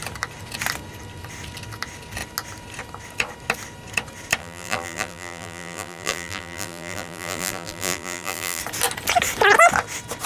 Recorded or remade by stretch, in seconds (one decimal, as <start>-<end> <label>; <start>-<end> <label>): 0.0-4.4 recorded; 4.4-8.6 remade; 8.6-10.3 recorded